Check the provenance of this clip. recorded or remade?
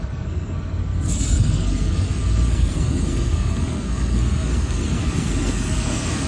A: remade